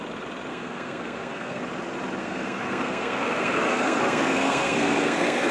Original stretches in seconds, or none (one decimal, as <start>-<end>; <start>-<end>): 0.0-0.5; 1.6-2.2

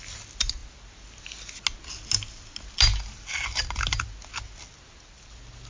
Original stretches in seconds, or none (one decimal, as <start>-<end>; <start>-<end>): 0.0-5.7

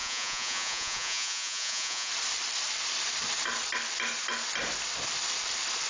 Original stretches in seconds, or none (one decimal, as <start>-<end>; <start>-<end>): 2.1-5.9

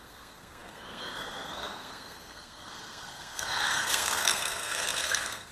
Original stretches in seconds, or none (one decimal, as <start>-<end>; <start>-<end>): none

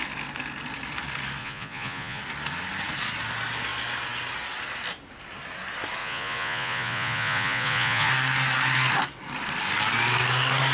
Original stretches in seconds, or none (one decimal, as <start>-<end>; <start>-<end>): 0.0-1.4; 2.2-6.0; 8.1-10.7

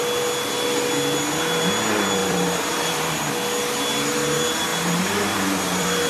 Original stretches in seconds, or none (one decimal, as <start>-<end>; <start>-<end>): 0.0-2.2; 3.3-4.7